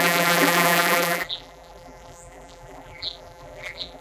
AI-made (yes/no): yes